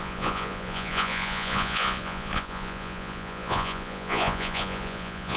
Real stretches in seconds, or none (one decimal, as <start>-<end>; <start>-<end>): none